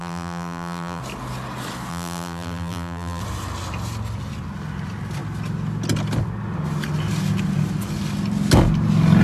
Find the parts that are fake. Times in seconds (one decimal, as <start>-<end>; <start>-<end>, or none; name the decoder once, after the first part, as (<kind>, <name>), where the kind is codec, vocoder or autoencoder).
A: 0.0-1.0 (vocoder, BigVGAN v2); 1.9-3.2